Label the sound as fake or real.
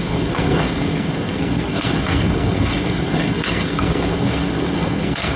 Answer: fake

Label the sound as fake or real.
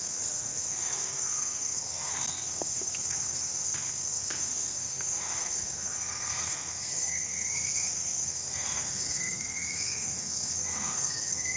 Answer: fake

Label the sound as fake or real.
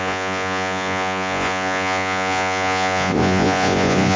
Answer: fake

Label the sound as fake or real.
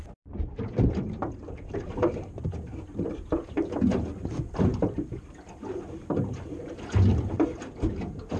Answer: real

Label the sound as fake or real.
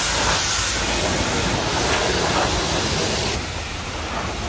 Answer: real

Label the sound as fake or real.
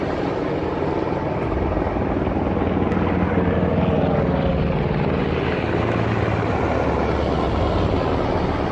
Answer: real